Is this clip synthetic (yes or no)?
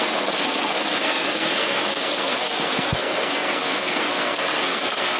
yes